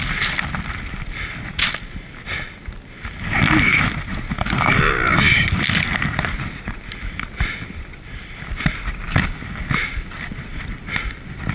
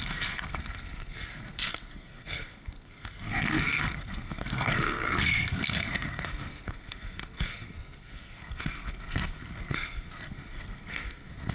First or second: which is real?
first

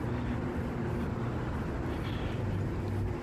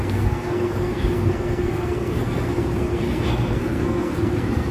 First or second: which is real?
first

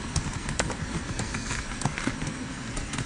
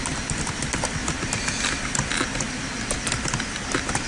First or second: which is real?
second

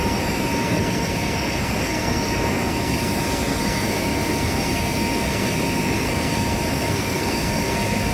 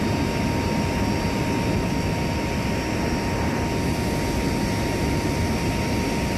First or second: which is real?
second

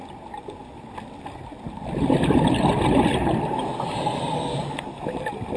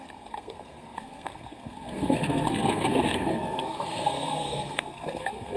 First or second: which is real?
first